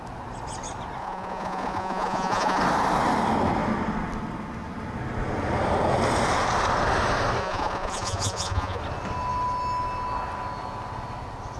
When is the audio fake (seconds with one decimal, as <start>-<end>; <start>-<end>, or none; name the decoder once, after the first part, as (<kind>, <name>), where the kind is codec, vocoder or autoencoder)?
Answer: 1.0-2.6 (vocoder, Vocos); 7.4-8.8